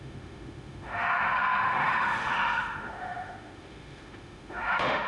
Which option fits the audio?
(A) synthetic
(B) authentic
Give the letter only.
A